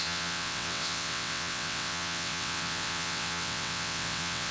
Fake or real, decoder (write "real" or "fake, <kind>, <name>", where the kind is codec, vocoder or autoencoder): fake, vocoder, WaveNeXt